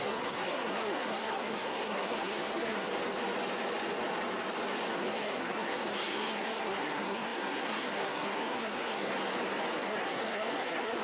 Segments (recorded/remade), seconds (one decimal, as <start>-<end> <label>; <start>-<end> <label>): 0.0-2.9 remade; 2.9-4.9 recorded; 4.9-9.1 remade; 9.1-9.8 recorded; 9.8-11.0 remade